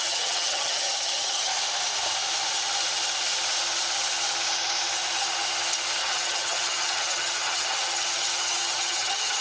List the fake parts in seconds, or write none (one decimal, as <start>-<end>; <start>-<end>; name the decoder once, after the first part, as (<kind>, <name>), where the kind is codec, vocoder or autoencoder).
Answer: 0.0-1.5 (vocoder, HiFi-GAN); 6.0-9.4